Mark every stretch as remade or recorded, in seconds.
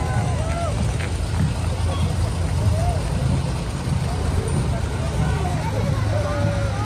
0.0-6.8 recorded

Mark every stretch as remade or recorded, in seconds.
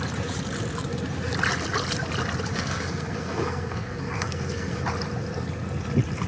0.0-2.5 recorded; 2.5-4.8 remade; 4.8-6.3 recorded